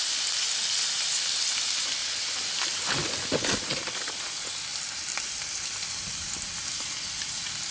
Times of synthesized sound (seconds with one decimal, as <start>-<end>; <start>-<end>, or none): 0.0-2.0; 2.9-7.7